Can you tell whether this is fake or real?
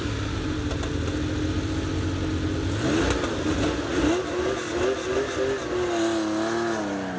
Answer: real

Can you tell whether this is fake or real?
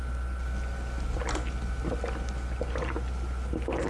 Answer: real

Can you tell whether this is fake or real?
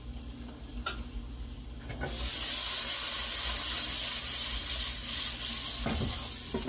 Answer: real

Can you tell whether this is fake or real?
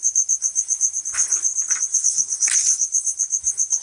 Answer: real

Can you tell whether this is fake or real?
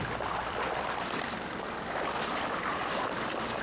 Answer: real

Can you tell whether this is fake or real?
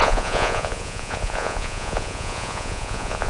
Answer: fake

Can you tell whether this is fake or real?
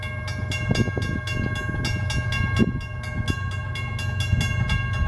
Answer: real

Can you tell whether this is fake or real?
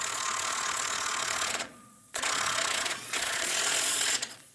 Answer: fake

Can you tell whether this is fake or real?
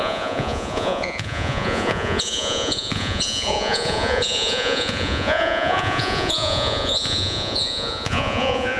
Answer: fake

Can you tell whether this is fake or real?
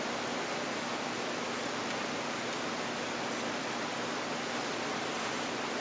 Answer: real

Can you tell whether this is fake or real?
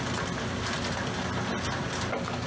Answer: real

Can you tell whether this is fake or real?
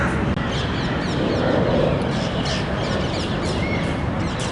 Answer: real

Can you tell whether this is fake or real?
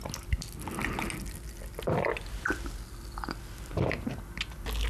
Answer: real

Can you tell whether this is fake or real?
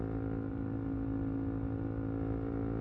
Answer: real